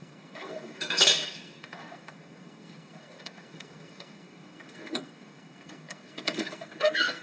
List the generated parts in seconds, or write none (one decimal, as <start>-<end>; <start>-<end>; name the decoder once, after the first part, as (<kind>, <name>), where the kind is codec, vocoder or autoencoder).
0.0-7.2 (codec, SNAC)